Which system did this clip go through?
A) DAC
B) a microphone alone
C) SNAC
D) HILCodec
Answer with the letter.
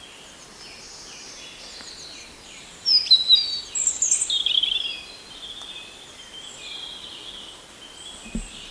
B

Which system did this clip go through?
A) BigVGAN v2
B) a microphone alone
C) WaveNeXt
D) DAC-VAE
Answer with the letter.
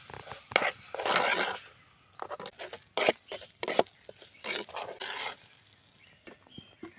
B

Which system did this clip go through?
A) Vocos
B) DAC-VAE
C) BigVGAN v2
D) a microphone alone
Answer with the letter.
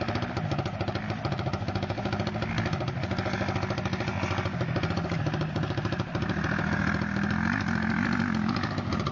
D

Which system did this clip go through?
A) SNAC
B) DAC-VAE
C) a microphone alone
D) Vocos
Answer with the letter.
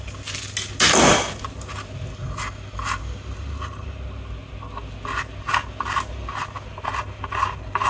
C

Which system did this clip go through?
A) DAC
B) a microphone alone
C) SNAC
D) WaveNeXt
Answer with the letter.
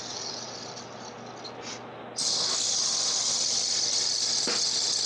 B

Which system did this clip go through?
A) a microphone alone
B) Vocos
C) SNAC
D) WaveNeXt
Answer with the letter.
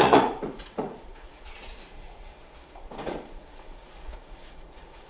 B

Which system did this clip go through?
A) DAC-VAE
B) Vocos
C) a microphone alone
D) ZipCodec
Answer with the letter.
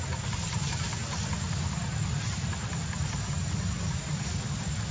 C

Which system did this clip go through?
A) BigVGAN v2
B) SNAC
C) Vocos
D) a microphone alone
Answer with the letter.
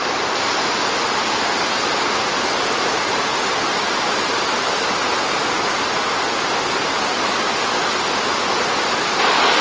D